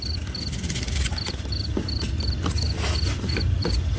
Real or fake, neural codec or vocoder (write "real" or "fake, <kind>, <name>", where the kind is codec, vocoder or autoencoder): real